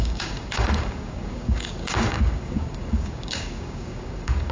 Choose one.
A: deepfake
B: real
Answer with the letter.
A